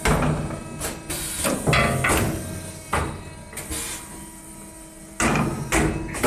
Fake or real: real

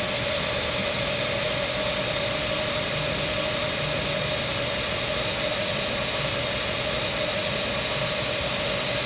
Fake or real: real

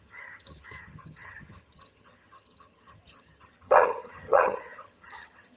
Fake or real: fake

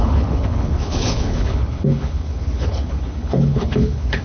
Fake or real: fake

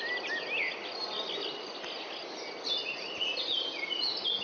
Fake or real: real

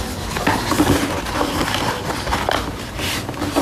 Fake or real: real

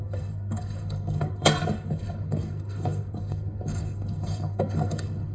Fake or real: fake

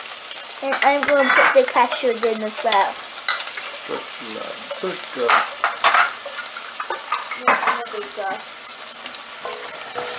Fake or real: real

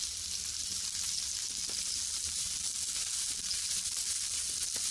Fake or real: real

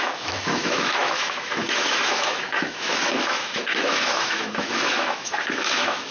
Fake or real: fake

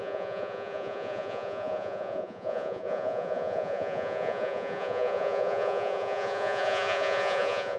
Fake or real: fake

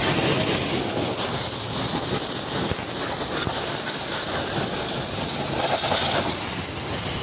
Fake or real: real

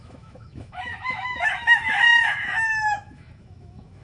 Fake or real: fake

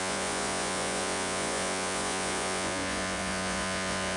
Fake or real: fake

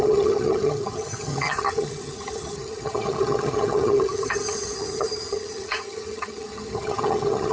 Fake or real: fake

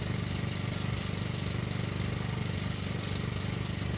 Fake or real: real